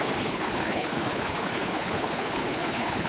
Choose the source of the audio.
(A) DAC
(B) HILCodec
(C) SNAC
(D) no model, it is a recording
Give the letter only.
B